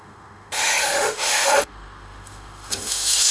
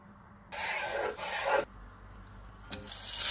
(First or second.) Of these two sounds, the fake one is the first